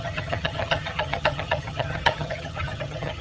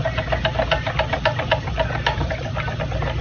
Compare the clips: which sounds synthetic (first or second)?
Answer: first